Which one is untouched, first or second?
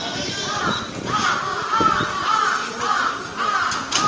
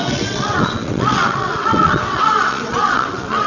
first